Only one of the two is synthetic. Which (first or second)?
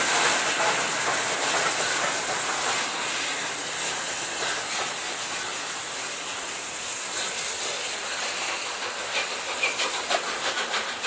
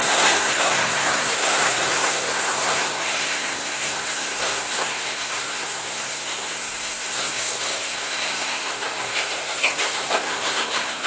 second